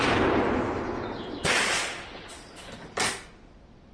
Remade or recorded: recorded